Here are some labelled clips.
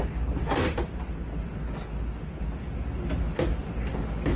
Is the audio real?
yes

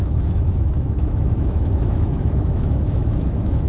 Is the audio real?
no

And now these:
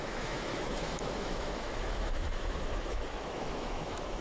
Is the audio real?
no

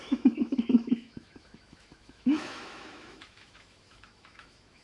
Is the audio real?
no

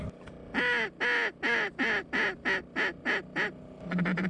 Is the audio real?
yes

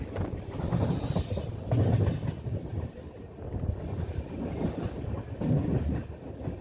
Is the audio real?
yes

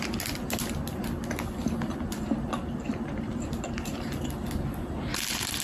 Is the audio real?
yes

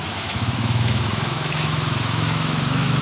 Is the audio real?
no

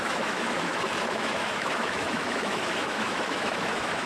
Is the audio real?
no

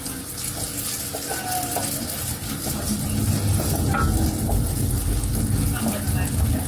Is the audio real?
yes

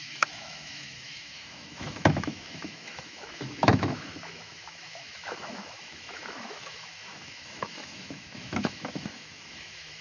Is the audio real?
no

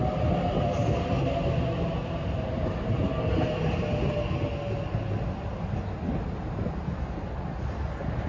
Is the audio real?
yes